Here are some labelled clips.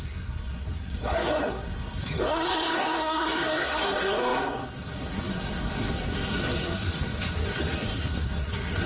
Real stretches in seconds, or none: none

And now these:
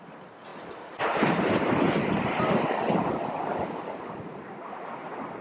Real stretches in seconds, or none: 0.0-5.4

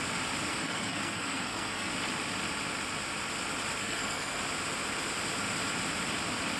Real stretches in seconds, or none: 0.0-0.5; 1.9-3.8; 4.4-6.6

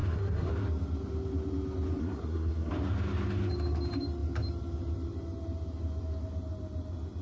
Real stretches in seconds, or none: 0.5-2.0; 2.7-7.2